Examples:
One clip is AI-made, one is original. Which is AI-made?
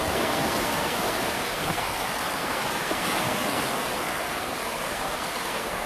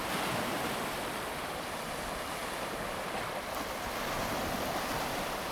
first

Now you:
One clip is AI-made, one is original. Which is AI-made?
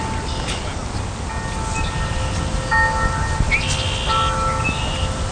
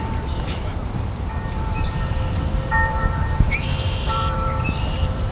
second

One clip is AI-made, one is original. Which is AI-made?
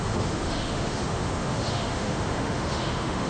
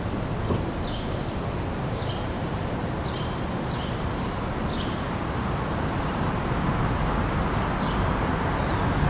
first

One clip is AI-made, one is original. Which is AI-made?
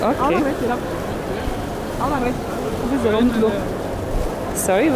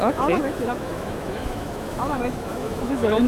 second